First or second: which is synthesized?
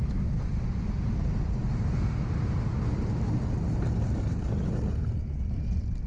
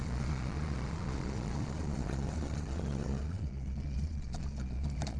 second